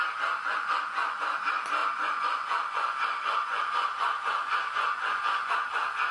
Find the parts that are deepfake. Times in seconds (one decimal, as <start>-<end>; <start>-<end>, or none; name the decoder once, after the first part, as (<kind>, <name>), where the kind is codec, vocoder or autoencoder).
0.5-1.2 (vocoder, Vocos); 1.8-5.5